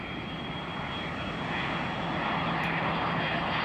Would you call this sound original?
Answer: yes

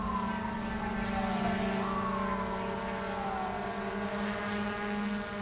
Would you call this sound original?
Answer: yes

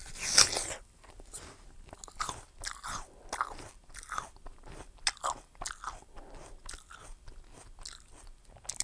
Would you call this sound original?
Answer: yes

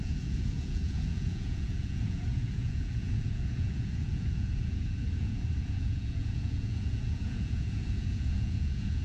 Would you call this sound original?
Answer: no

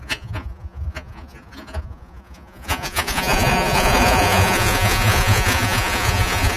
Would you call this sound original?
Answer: no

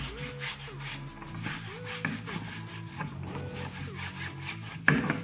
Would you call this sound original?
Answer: yes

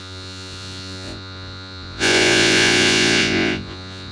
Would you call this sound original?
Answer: no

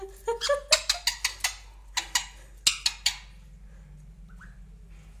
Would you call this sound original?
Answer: yes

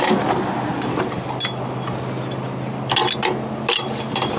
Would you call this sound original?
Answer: yes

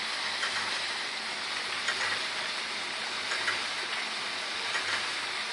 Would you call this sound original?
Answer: yes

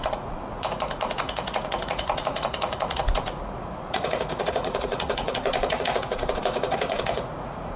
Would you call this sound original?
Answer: no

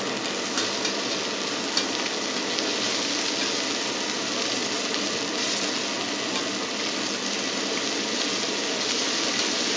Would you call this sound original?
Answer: yes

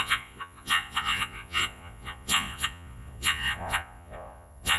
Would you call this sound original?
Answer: no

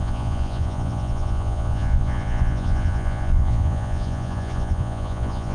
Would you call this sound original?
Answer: no